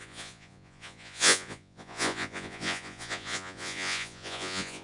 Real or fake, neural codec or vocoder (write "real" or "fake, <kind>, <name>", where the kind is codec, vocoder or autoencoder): fake, vocoder, Vocos